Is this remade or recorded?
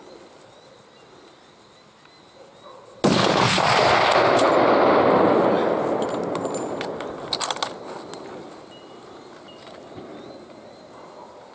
recorded